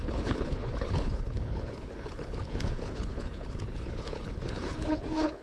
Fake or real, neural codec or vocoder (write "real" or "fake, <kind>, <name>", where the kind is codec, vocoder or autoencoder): fake, codec, HILCodec